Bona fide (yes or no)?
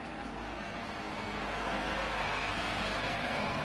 no